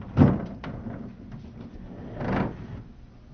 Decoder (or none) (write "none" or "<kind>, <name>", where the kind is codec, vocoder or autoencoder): none